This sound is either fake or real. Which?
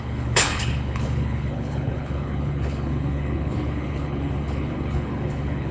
fake